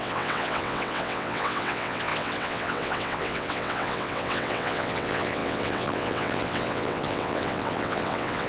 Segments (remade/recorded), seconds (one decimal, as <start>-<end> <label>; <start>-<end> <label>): 0.0-8.5 remade